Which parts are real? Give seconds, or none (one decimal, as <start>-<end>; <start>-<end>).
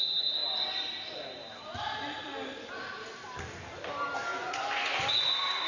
0.0-4.3; 4.9-5.7